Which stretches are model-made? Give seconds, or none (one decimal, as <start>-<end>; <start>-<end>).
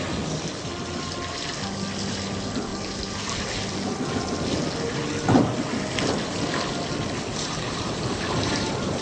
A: 7.3-9.0